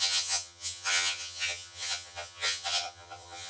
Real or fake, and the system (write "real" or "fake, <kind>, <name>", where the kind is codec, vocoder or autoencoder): fake, vocoder, HiFi-GAN